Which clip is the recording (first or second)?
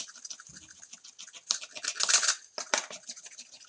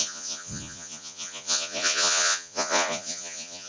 first